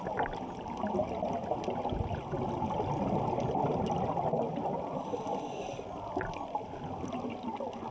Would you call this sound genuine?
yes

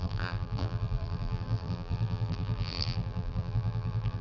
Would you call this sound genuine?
no